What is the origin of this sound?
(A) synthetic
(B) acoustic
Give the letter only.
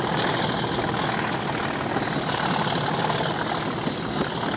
B